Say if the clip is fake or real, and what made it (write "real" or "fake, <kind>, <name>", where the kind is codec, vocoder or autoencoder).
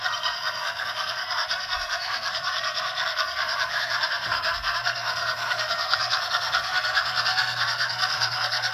fake, codec, SNAC